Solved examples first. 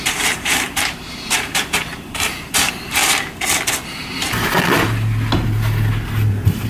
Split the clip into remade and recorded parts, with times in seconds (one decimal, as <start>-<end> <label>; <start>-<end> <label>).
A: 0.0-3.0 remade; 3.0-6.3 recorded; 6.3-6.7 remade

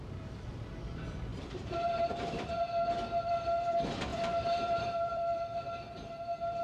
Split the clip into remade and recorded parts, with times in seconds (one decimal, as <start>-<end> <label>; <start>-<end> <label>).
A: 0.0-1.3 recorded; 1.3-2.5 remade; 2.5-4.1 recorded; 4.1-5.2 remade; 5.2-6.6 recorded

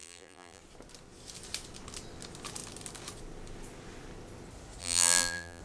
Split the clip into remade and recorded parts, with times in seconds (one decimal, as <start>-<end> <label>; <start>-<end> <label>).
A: 0.0-0.6 remade; 0.6-4.8 recorded; 4.8-5.6 remade

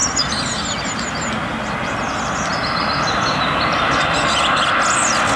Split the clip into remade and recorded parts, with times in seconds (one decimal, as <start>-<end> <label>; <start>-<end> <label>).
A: 0.0-1.0 remade; 1.0-5.4 recorded

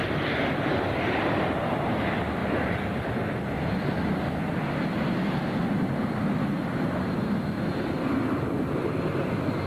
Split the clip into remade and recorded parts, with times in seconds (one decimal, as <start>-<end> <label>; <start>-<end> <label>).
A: 0.0-1.7 remade; 1.7-2.4 recorded; 2.4-4.2 remade; 4.2-9.7 recorded

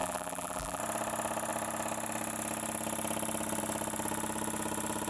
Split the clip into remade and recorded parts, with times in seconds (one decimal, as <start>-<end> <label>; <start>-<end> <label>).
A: 0.0-0.8 remade; 0.8-5.1 recorded

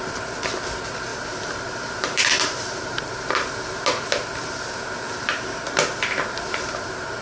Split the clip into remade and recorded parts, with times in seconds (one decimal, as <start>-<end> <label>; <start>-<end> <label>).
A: 0.0-1.1 recorded; 1.1-3.5 remade; 3.5-5.1 recorded; 5.1-7.2 remade